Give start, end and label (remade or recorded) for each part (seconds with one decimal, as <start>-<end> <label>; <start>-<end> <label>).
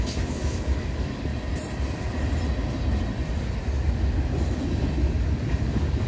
0.0-1.3 remade; 1.3-5.0 recorded; 5.0-6.1 remade